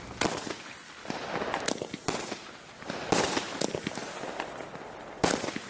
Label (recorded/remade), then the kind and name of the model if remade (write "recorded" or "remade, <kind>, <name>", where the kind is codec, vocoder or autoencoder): recorded